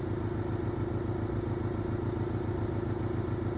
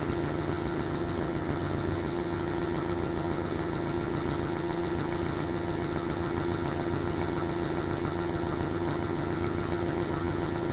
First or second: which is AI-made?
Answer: second